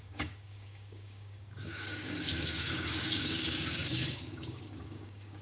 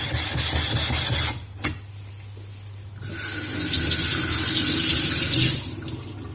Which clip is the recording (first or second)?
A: second